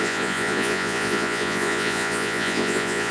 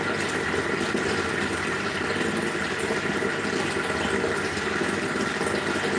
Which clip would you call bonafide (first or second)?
second